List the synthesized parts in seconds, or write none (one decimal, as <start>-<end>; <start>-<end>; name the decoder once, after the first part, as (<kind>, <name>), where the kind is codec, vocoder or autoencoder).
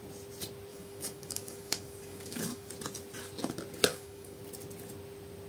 0.7-2.7 (codec, DAC); 3.9-4.4